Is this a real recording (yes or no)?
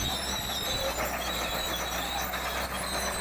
yes